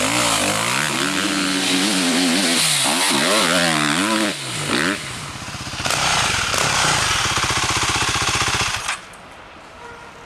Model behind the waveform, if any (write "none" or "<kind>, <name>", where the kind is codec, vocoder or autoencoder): none